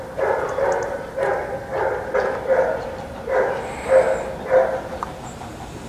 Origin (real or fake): real